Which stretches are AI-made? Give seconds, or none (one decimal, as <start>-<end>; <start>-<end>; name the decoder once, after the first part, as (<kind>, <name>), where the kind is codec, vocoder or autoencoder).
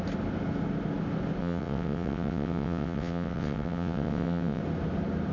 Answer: 1.4-4.6 (vocoder, WaveNeXt)